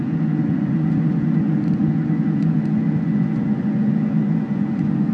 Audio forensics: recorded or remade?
remade